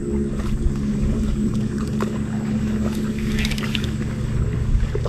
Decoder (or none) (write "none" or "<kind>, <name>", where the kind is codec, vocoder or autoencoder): codec, DAC